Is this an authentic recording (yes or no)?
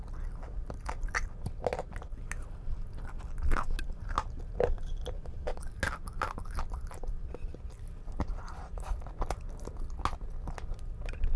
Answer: yes